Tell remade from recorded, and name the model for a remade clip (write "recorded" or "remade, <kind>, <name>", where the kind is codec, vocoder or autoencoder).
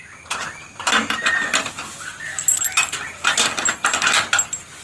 recorded